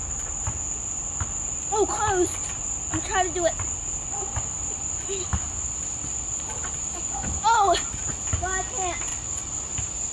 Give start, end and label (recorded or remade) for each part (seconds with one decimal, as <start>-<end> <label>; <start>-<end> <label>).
0.0-4.2 recorded; 4.2-7.4 remade; 7.4-9.1 recorded; 9.1-9.6 remade; 9.6-10.1 recorded